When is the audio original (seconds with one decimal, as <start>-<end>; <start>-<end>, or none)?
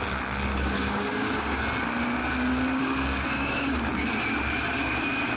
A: 0.0-0.5; 1.6-2.8; 3.9-5.4